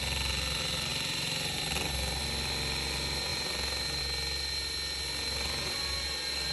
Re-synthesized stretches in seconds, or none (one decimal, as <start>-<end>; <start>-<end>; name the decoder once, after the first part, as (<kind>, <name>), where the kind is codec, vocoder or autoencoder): 0.9-1.6 (vocoder, BigVGAN v2)